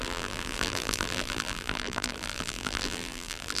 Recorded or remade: remade